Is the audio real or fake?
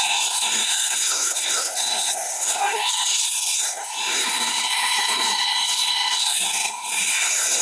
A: fake